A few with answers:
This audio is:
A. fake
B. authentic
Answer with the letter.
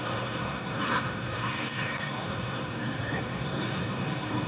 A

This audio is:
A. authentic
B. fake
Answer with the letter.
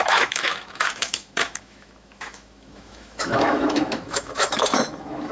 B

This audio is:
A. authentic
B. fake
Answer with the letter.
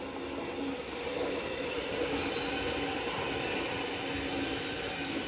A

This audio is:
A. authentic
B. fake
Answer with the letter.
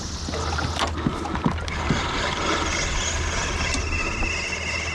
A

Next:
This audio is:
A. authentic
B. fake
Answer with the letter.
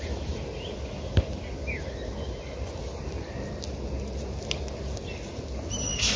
A